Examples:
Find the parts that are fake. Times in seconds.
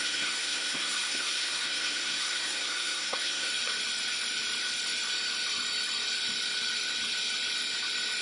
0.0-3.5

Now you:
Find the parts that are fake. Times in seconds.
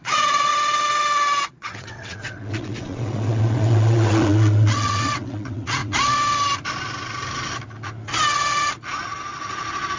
0.0-0.5; 1.5-5.8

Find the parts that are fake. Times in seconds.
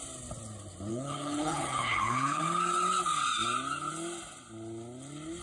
0.9-2.4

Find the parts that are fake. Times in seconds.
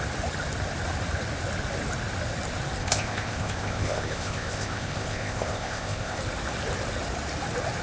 2.8-6.2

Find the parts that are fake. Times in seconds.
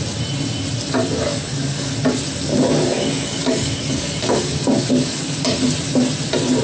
1.3-1.9; 2.5-5.2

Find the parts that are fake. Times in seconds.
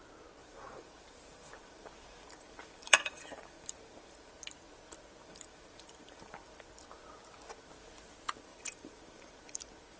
0.4-4.3; 5.2-6.3; 8.5-9.6